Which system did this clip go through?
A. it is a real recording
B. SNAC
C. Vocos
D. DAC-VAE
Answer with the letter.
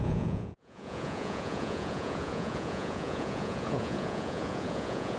C